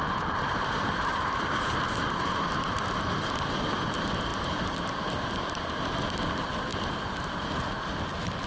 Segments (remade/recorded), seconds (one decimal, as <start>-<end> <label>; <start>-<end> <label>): 0.0-4.3 recorded; 4.3-5.6 remade; 5.6-8.5 recorded